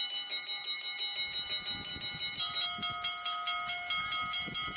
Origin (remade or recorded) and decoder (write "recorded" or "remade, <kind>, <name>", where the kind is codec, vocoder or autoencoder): recorded